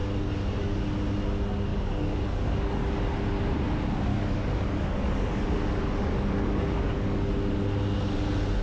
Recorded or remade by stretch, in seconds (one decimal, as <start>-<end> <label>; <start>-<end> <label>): 0.0-0.8 remade; 0.8-1.7 recorded; 1.7-3.0 remade; 3.0-4.1 recorded; 4.1-7.3 remade; 7.3-8.6 recorded